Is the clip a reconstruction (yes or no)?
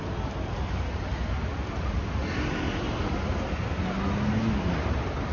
no